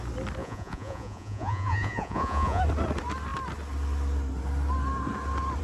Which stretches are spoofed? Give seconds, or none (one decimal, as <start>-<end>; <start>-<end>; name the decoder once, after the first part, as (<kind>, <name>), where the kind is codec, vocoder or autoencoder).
0.4-2.6 (vocoder, Vocos)